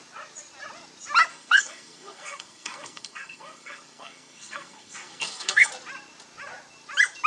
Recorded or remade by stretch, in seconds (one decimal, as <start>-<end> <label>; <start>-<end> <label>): 0.0-1.3 recorded; 1.3-5.7 remade; 5.7-7.3 recorded